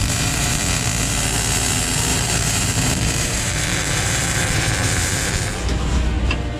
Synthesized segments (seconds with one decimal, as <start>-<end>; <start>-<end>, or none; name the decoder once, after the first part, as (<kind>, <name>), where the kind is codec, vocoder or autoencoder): 0.0-0.6 (vocoder, BigVGAN v2); 2.1-5.3